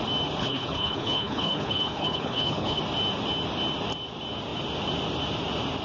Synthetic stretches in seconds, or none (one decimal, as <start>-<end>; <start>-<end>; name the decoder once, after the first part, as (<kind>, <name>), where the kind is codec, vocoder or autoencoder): 0.4-2.8 (codec, HILCodec)